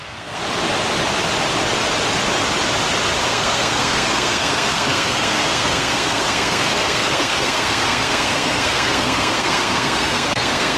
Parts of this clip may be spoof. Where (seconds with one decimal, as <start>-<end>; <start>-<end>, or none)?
0.0-0.4; 3.3-10.8